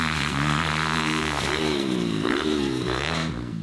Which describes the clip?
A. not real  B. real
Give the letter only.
A